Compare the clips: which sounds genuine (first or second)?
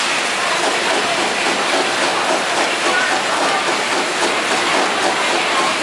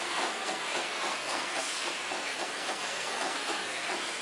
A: first